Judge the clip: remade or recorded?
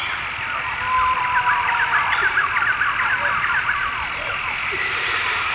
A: remade